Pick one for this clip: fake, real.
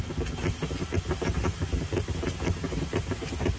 real